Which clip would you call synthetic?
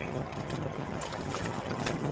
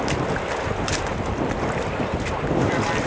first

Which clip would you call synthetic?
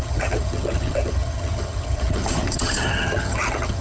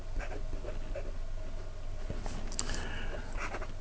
first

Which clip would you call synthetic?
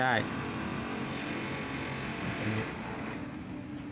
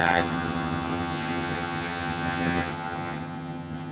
second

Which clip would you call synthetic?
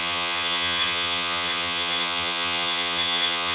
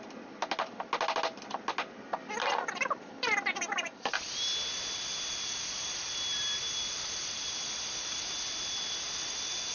first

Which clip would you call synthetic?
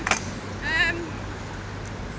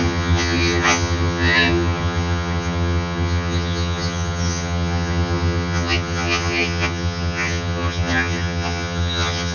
second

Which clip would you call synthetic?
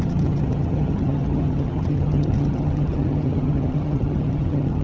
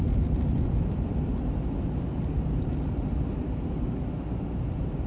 first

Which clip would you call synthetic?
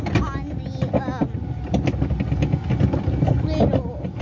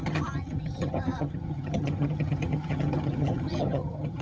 second